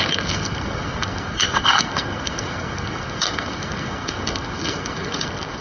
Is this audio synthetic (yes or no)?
yes